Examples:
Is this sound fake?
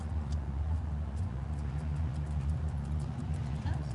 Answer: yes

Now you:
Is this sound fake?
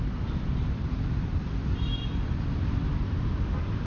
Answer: no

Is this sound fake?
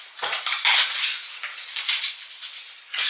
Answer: no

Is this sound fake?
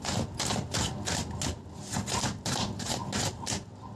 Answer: no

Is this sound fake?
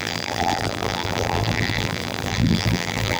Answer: yes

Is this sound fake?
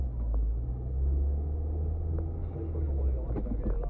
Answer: no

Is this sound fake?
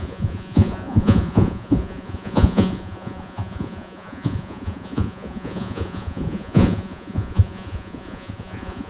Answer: yes